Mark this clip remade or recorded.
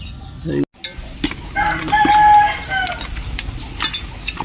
recorded